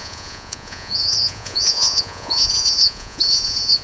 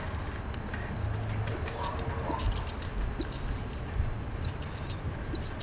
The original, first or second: second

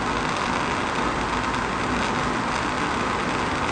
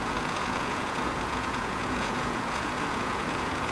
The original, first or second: first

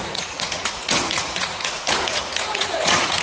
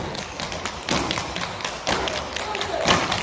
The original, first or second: second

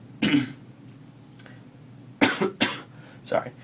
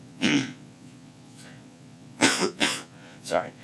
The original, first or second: first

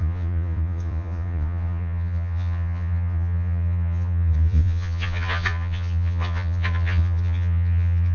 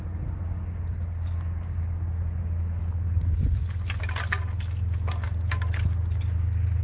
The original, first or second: second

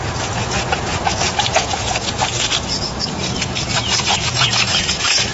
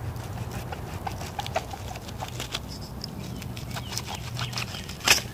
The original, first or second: second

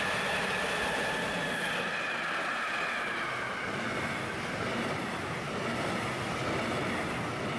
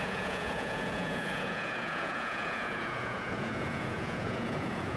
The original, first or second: first